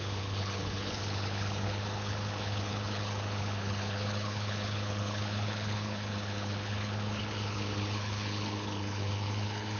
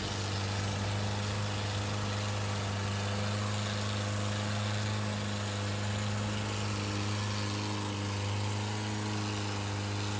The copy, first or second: first